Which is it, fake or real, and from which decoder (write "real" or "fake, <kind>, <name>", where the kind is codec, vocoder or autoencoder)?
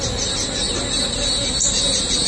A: real